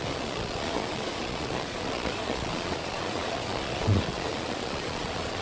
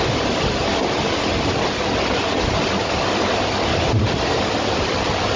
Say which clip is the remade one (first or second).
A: first